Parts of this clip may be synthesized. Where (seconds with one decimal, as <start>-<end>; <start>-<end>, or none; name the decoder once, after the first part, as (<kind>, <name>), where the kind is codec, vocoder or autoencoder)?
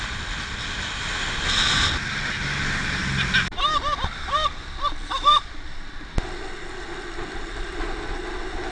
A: none